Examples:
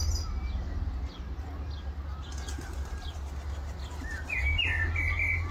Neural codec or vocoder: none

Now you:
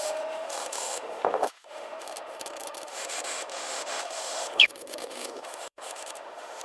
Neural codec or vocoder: autoencoder, DAC-VAE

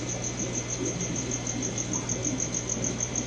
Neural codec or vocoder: none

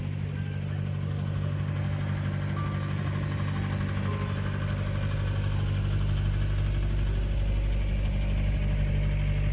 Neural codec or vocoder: none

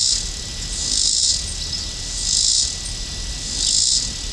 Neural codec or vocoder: none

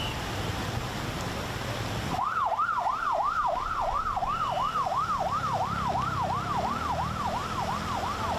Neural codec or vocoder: none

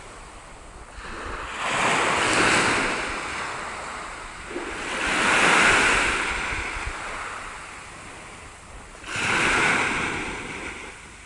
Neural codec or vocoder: none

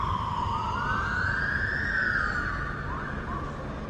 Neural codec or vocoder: none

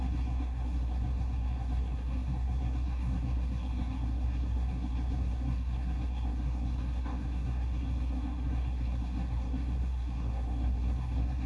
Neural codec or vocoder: codec, SNAC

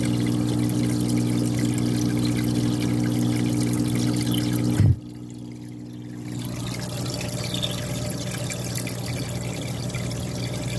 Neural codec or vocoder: none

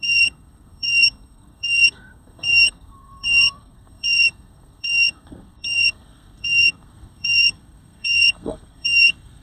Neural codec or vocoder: codec, SNAC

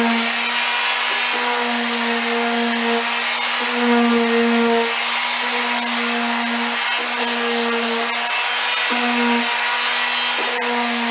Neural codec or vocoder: none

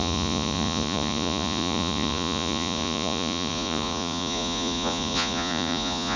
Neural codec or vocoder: vocoder, Vocos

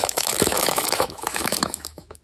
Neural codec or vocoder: autoencoder, DAC-VAE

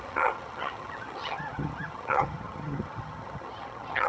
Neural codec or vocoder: vocoder, HiFi-GAN